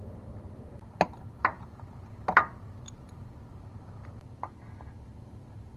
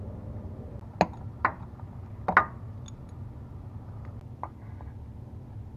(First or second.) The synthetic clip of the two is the first